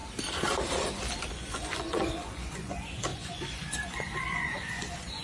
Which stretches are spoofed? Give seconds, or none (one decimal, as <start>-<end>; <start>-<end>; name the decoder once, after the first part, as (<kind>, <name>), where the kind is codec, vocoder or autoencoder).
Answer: 1.3-5.2 (vocoder, Vocos)